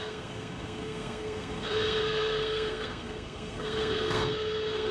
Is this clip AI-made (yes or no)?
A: yes